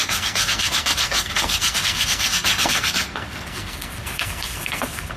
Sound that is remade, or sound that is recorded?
remade